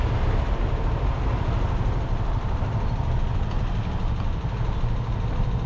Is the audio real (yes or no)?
yes